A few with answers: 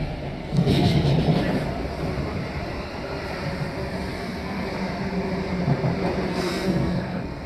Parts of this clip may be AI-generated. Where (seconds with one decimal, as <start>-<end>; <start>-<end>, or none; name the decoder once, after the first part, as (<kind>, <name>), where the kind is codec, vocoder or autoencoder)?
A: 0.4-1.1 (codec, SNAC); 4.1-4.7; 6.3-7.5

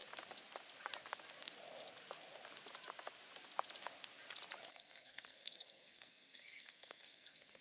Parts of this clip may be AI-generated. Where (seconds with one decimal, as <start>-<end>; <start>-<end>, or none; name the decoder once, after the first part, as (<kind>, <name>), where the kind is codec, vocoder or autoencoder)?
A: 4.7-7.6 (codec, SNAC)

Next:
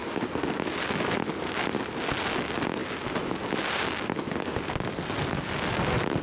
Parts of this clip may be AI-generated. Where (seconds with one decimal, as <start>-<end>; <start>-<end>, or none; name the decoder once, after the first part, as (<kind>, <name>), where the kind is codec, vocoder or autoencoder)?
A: none

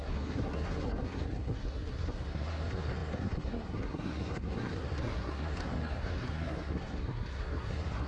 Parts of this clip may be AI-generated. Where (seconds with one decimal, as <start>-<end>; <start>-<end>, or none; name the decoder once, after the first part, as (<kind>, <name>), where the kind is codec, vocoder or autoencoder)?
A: 0.0-8.1 (codec, SNAC)